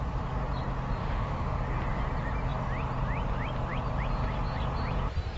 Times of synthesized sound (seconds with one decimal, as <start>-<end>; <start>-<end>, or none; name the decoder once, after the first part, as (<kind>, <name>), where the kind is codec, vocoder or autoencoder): 1.0-1.6 (autoencoder, DAC-VAE)